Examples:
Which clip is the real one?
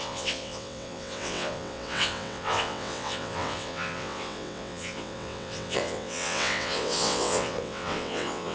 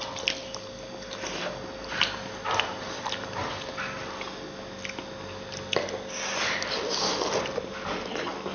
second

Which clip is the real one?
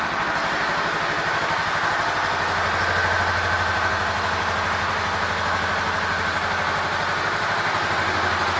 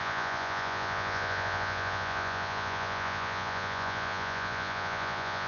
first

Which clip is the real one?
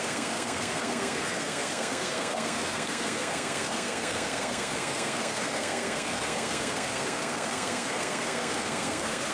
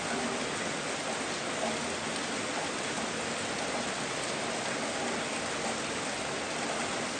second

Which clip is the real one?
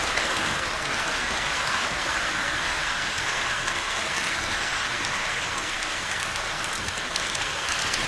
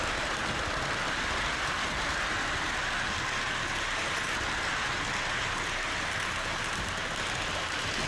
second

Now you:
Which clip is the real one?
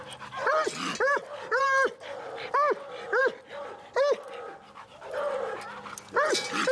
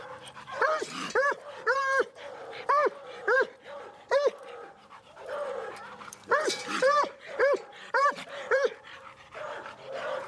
first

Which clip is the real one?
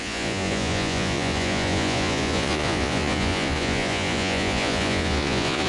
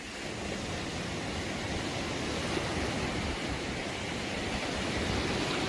second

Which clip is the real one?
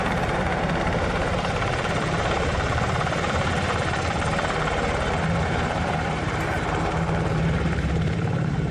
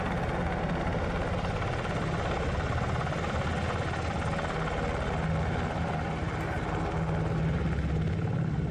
second